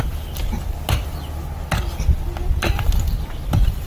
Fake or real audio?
real